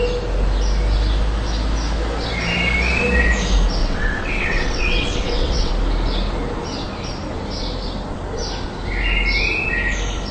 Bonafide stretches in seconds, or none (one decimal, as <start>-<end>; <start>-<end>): 0.0-3.8; 5.7-10.3